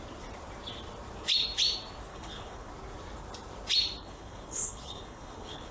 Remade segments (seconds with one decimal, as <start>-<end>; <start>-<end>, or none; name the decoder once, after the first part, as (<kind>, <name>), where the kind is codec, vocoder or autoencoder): 2.1-2.7 (codec, HILCodec); 4.0-5.7